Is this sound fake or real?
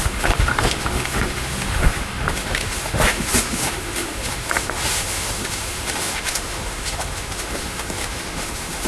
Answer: fake